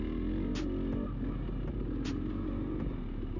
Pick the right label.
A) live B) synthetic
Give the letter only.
A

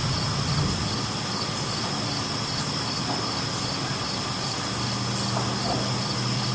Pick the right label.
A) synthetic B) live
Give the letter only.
B